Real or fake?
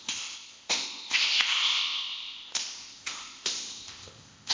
fake